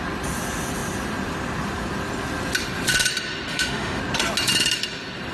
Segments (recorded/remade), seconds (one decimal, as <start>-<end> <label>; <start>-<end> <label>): 0.0-3.5 recorded; 3.5-4.0 remade; 4.0-5.3 recorded